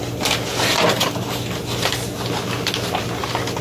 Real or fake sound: real